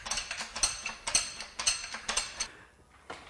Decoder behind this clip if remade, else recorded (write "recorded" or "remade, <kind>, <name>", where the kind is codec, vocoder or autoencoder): recorded